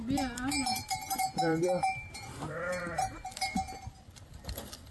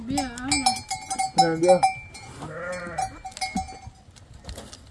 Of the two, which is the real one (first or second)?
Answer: second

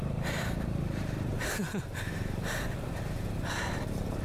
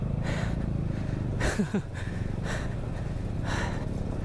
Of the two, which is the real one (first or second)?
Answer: second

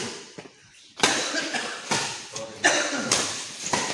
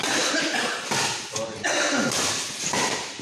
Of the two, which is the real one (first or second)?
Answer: second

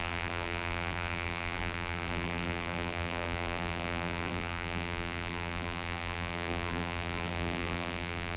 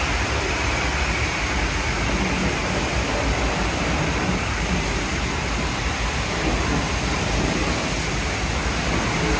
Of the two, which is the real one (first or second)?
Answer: second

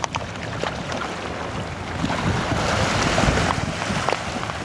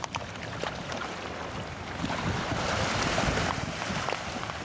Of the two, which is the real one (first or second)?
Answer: first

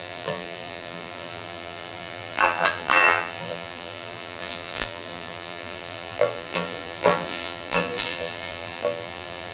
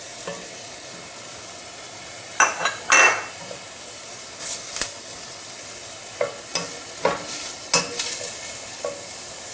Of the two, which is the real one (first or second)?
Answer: second